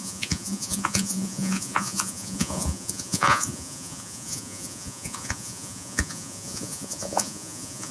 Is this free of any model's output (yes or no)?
no